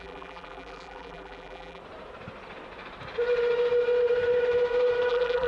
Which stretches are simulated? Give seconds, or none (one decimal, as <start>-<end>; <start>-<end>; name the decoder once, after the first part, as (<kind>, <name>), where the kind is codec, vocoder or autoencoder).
0.0-1.8 (vocoder, BigVGAN v2); 5.1-5.5